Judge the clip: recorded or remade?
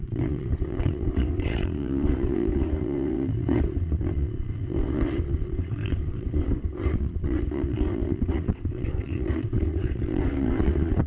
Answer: remade